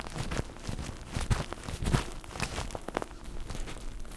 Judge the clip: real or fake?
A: real